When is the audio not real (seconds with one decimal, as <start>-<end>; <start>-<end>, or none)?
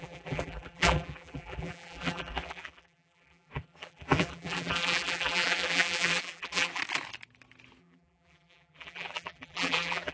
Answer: 0.0-6.8; 7.8-10.1